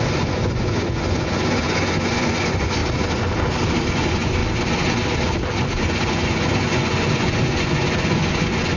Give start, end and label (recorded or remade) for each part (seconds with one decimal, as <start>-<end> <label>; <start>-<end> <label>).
0.0-2.8 remade; 2.8-3.9 recorded; 3.9-4.4 remade; 4.4-5.7 recorded; 5.7-8.8 remade

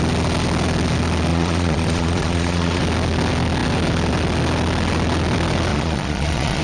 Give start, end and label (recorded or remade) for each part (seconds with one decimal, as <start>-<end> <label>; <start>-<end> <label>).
0.0-1.3 recorded; 1.3-2.8 remade; 2.8-5.7 recorded; 5.7-6.6 remade

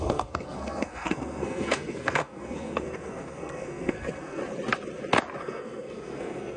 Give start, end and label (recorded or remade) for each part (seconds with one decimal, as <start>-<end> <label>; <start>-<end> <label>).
0.0-4.4 remade; 4.4-5.4 recorded; 5.4-6.6 remade

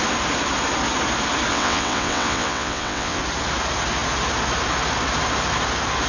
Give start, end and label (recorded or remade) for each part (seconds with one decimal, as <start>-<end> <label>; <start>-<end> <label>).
0.0-1.5 recorded; 1.5-3.2 remade; 3.2-6.1 recorded

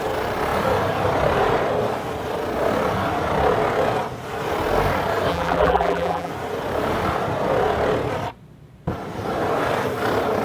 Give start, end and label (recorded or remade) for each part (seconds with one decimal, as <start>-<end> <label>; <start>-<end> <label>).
0.0-5.3 recorded; 5.3-6.3 remade; 6.3-10.4 recorded

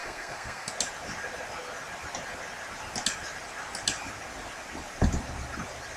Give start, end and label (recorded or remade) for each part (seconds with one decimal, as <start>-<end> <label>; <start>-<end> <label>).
0.0-0.7 remade; 0.7-6.0 recorded